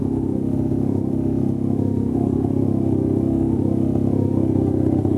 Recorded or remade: remade